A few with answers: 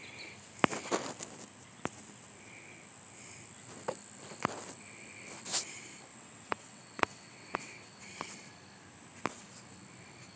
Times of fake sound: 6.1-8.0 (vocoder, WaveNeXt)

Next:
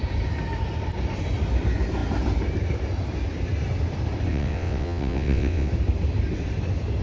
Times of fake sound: 4.3-5.7 (vocoder, WaveNeXt)

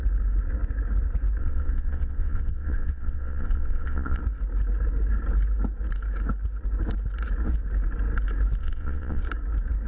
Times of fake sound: 1.4-4.2 (vocoder, WaveNeXt); 8.6-9.2

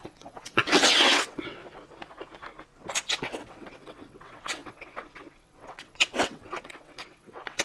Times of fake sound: 0.0-1.6 (vocoder, WaveNeXt); 3.2-7.6

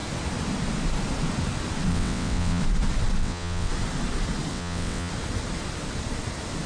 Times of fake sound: 1.9-2.6 (vocoder, WaveNeXt); 3.2-3.7; 4.5-5.1

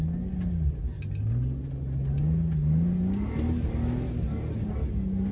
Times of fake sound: none

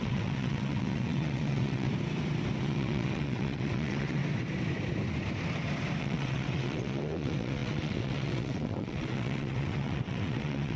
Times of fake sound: 0.0-1.9 (vocoder, WaveNeXt); 2.6-4.2; 6.0-10.8